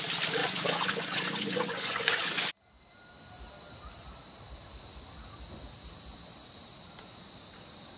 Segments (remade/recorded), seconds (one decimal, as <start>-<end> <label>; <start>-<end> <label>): 0.0-0.4 recorded; 0.4-2.5 remade; 2.5-8.0 recorded